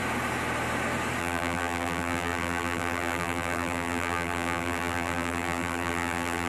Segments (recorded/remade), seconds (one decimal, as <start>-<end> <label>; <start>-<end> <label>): 0.0-1.2 recorded; 1.2-6.5 remade